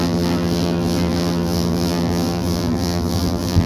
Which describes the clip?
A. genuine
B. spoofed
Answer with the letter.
B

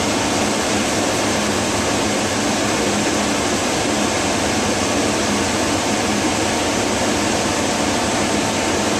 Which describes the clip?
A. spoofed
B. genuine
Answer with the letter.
B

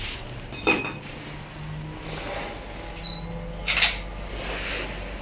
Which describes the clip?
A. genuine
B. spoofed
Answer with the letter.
A